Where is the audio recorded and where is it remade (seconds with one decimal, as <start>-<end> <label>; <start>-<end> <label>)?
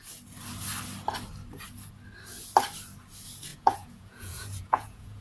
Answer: 0.0-3.5 recorded; 3.5-5.2 remade